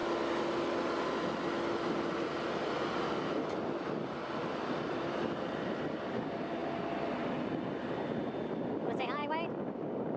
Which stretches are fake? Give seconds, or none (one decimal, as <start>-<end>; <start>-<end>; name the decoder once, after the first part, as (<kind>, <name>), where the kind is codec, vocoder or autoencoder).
none